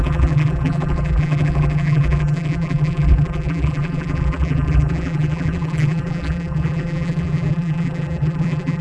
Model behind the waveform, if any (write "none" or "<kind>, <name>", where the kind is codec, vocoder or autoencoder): vocoder, BigVGAN v2